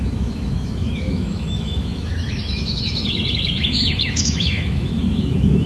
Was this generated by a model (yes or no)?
yes